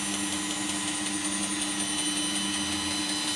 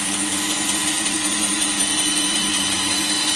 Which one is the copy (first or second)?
second